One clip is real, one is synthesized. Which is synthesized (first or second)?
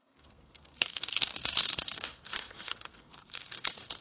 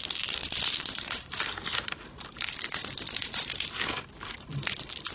first